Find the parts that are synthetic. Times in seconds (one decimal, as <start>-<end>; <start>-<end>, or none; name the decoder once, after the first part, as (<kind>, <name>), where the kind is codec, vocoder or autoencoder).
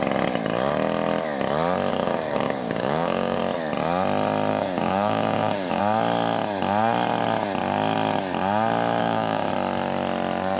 1.9-3.4 (codec, DAC); 4.5-5.8; 9.0-9.5